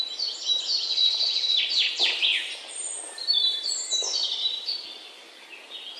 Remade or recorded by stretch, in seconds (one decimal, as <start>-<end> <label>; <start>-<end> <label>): 0.0-1.0 recorded; 1.0-1.7 remade; 1.7-2.3 recorded; 2.3-6.0 remade